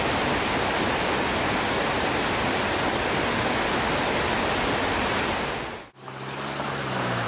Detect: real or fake real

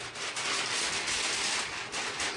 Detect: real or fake real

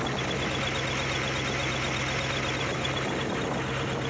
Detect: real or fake real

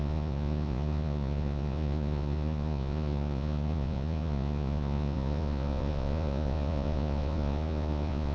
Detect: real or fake fake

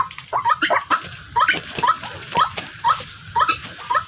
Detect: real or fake real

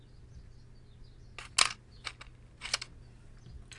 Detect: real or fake real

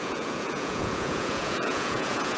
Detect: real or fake fake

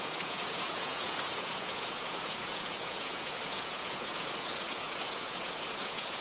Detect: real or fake fake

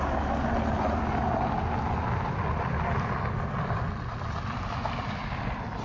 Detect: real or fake real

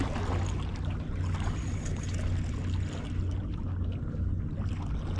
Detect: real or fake real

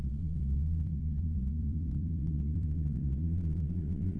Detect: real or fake fake